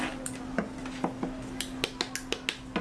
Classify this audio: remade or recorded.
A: recorded